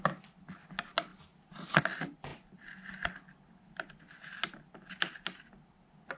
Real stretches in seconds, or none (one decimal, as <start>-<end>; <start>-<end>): 0.0-6.2